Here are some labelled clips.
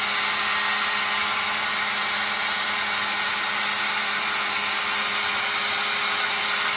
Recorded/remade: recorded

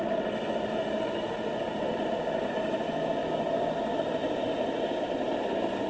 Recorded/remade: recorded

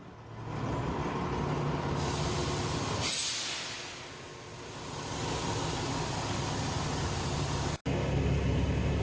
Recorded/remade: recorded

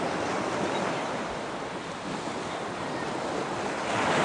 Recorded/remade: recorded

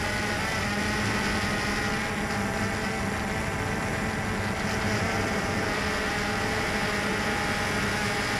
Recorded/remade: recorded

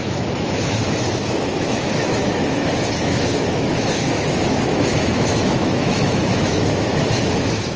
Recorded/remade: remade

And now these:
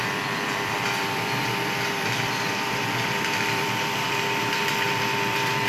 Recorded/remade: remade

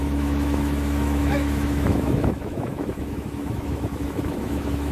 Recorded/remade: remade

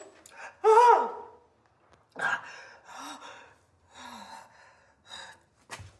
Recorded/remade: recorded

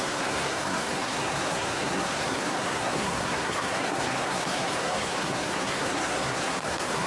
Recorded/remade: remade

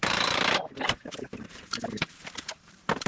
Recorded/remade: remade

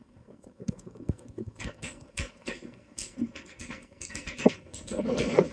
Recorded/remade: remade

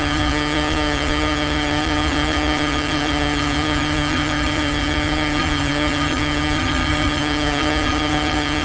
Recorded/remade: remade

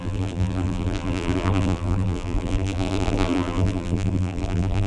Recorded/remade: remade